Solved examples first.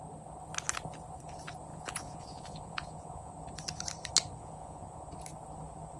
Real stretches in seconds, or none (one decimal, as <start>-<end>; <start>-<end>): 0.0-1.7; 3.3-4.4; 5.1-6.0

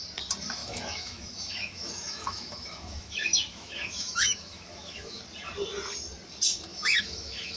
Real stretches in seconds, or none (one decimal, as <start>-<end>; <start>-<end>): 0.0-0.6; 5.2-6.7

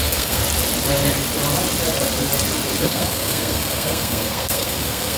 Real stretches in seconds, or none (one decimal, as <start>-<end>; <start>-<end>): 0.4-2.8

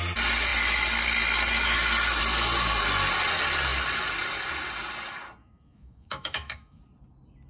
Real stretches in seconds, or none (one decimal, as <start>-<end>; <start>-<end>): 0.0-5.4; 6.8-7.5

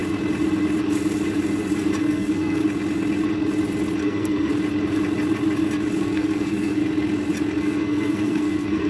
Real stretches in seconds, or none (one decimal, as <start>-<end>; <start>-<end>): 0.0-2.0; 2.6-4.0; 4.5-6.0; 6.8-7.6

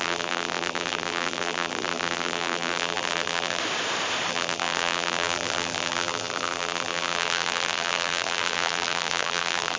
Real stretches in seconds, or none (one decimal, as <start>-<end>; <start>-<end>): 3.6-4.3